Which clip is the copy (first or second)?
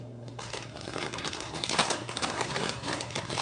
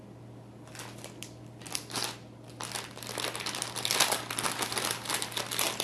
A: first